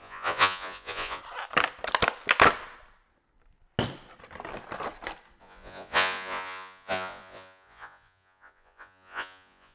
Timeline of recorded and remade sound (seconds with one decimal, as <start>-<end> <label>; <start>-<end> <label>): 0.0-1.2 remade; 1.2-5.4 recorded; 5.4-9.7 remade